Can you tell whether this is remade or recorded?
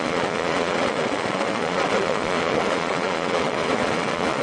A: remade